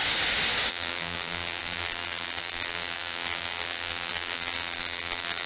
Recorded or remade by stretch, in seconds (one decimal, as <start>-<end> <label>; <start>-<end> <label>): 0.0-0.7 recorded; 0.7-5.5 remade